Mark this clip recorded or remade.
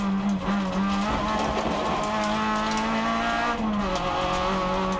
recorded